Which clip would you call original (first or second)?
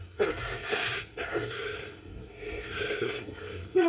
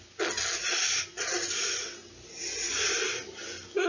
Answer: second